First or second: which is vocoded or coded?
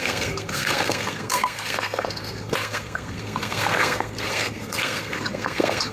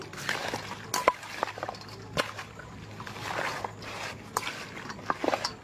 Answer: first